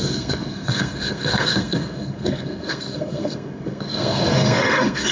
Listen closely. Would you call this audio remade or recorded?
remade